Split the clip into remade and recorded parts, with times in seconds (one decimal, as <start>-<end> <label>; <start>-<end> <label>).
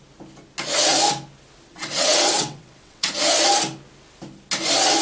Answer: 0.0-1.7 recorded; 1.7-3.1 remade; 3.1-5.0 recorded